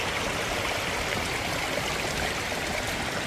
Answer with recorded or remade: recorded